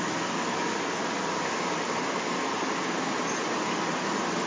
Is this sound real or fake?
real